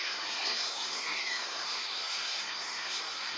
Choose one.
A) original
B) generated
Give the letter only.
B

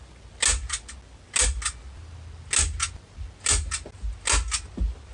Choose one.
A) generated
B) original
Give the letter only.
B